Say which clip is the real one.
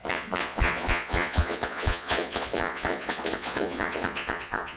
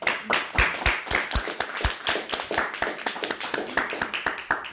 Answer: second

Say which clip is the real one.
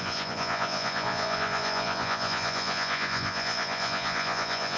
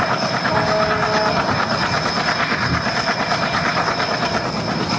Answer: second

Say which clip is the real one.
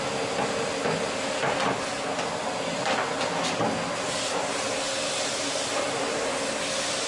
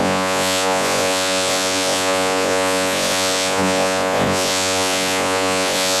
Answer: first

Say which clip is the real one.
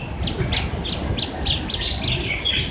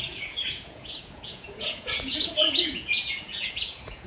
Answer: first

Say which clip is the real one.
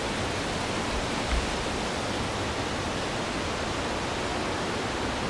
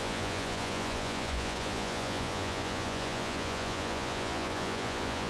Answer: first